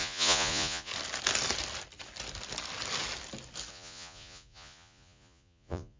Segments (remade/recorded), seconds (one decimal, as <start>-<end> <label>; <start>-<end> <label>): 0.0-0.9 remade; 0.9-3.7 recorded; 3.7-6.0 remade